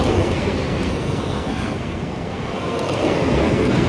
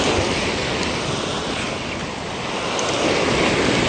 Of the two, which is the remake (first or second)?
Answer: first